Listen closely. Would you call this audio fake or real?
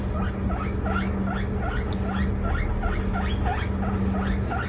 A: real